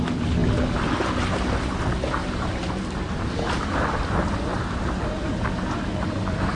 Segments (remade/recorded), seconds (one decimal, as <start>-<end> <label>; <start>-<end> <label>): 0.0-2.2 recorded; 2.2-3.0 remade; 3.0-4.5 recorded; 4.5-6.6 remade